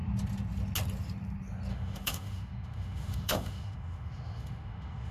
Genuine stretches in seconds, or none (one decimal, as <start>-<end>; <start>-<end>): 0.0-1.7